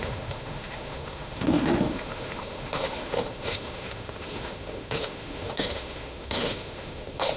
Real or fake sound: fake